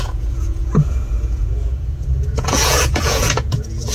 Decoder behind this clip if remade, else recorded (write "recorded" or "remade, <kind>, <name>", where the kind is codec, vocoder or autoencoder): remade, vocoder, Vocos